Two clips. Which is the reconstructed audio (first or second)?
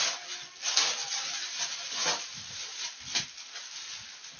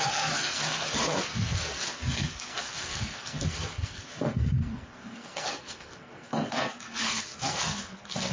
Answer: second